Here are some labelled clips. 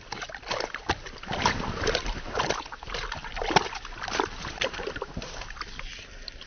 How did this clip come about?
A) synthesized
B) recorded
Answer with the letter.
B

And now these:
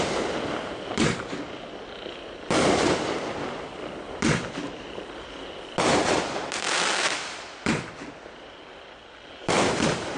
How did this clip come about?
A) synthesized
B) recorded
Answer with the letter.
B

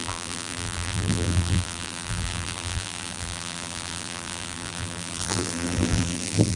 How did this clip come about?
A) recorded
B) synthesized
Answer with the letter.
B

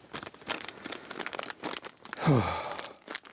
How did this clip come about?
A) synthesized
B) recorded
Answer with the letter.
B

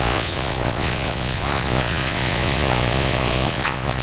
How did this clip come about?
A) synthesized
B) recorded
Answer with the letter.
A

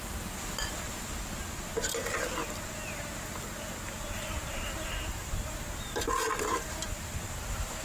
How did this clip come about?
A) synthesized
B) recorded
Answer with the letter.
B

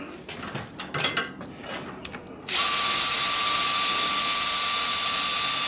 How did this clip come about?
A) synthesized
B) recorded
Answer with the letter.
B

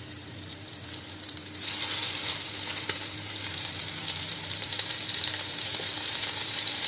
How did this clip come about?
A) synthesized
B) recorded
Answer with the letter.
A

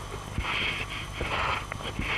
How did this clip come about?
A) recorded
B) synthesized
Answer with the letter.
A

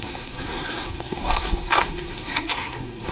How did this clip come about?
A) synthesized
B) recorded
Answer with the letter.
A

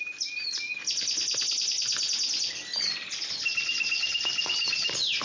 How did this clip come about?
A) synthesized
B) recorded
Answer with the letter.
B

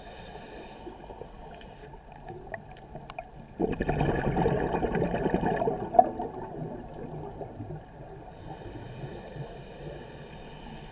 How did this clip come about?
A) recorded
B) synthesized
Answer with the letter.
A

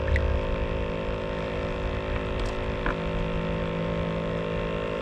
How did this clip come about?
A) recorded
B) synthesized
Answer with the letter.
A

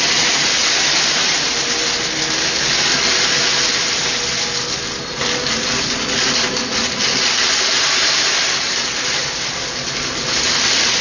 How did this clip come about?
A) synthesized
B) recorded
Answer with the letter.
B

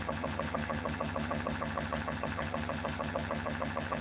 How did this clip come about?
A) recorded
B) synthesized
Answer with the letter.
B